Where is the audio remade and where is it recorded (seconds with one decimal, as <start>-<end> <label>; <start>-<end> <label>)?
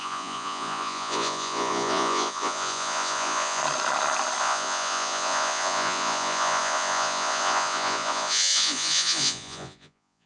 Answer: 0.0-3.6 remade; 3.6-4.4 recorded; 4.4-10.3 remade